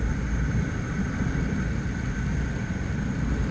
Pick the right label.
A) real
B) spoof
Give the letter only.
A